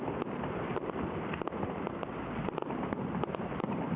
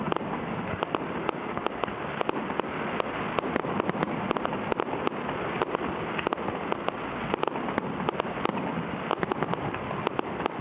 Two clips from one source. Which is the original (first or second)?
second